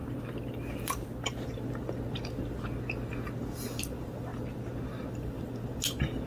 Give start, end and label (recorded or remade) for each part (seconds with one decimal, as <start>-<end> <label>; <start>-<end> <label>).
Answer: 0.0-3.8 recorded; 3.8-4.3 remade; 4.3-5.1 recorded; 5.1-6.3 remade